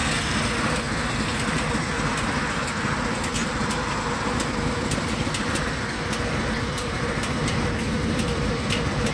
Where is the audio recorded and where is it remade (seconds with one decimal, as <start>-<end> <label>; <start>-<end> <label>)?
0.0-1.9 recorded; 1.9-9.1 remade